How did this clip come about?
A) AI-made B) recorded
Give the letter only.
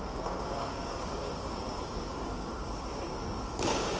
A